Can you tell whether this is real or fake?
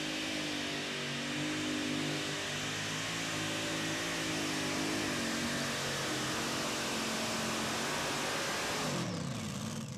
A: real